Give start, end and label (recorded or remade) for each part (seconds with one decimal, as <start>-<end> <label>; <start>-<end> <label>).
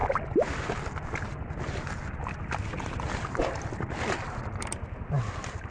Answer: 0.0-5.7 recorded